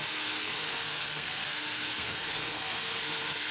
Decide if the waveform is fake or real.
fake